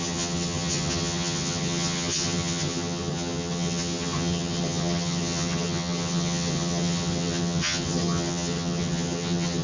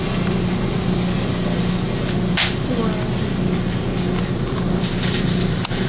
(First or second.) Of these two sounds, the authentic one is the second